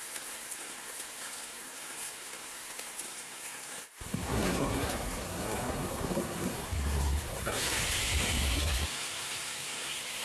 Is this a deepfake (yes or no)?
yes